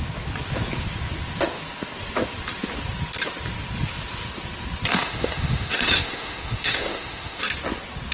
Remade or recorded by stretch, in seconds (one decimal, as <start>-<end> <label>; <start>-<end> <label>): 0.0-4.9 recorded; 4.9-7.4 remade; 7.4-8.1 recorded